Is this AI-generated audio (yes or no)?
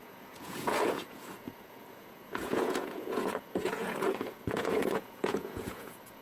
yes